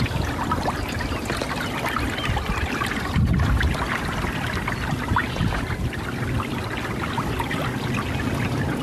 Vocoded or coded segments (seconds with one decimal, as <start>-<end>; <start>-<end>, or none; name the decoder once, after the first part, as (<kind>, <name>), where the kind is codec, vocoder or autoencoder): none